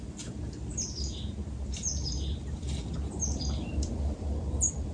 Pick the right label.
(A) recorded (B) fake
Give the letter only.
B